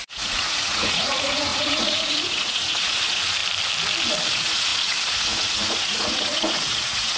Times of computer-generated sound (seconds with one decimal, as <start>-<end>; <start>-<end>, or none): 0.0-3.4; 4.3-7.2